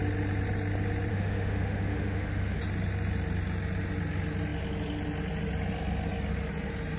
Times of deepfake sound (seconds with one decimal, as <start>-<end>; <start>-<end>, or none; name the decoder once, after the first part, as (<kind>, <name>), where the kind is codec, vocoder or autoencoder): 1.1-2.6 (autoencoder, DAC-VAE)